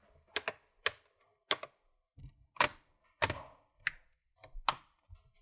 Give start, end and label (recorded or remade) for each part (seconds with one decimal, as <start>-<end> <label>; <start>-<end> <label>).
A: 0.0-5.4 recorded